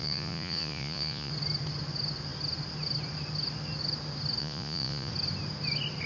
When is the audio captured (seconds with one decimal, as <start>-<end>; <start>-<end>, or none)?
1.3-4.4; 5.1-6.1